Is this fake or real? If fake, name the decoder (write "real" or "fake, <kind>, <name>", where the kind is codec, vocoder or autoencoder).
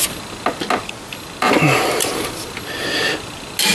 real